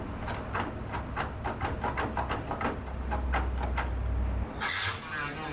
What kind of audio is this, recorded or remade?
recorded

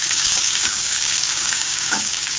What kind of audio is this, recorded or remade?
remade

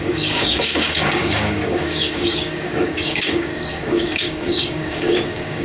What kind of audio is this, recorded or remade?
remade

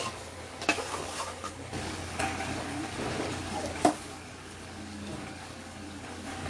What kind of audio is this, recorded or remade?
remade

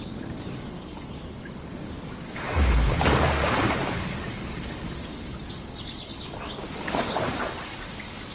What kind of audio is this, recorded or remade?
remade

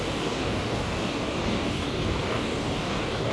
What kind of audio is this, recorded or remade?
remade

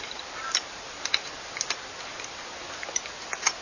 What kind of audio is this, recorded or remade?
recorded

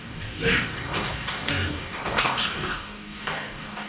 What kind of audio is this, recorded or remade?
remade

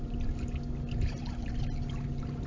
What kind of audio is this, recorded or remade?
recorded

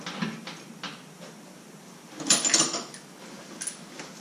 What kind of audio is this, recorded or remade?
recorded